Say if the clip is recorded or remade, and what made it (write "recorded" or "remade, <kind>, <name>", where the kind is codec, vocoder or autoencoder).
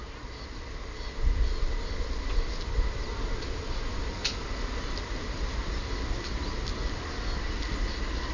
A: recorded